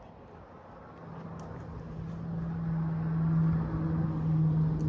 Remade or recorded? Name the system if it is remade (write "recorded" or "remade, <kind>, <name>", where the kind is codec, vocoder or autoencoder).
recorded